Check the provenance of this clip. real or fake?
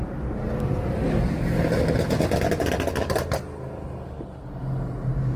real